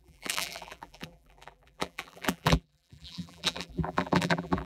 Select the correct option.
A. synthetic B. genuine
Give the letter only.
A